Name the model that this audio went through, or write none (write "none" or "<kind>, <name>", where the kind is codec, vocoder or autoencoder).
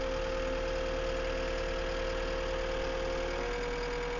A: none